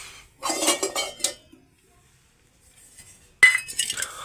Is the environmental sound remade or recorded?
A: recorded